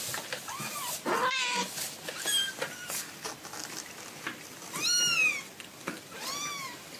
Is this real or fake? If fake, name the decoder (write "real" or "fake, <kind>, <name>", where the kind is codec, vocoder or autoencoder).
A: real